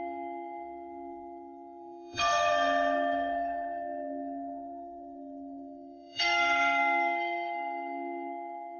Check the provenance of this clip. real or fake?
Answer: fake